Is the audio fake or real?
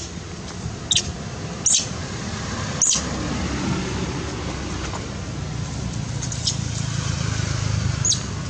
real